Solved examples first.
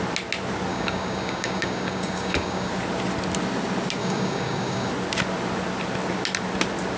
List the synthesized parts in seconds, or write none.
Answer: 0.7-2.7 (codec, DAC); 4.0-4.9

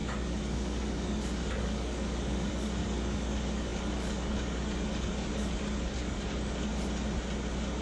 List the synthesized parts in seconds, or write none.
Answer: 0.0-6.7 (codec, DAC)

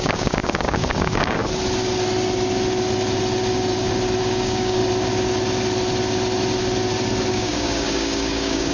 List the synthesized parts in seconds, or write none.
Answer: 0.0-1.4 (codec, DAC); 4.2-4.8; 7.3-8.7

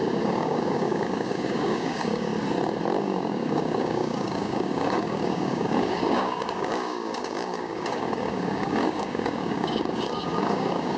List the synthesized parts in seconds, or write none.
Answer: 0.0-2.3 (codec, DAC); 3.0-11.0

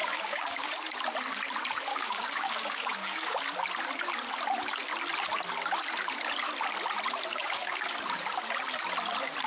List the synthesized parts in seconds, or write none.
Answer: 0.0-0.7 (codec, DAC); 1.9-3.4; 7.4-7.9

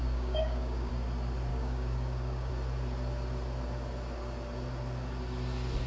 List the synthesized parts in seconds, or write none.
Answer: 0.0-0.9 (codec, DAC); 1.5-2.5

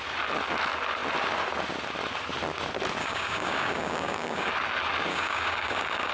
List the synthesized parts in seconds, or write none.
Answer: 3.0-4.5 (codec, DAC); 5.1-6.1

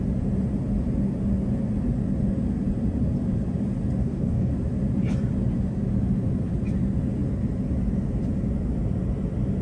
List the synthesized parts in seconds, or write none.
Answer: 4.0-4.5 (codec, DAC)